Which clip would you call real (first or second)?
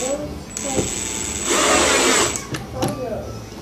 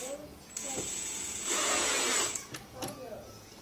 first